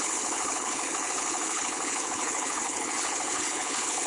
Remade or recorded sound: remade